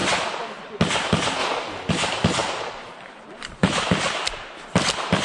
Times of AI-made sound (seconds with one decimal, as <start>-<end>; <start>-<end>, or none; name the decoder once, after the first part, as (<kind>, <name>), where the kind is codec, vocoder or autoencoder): 2.4-4.8 (vocoder, BigVGAN v2)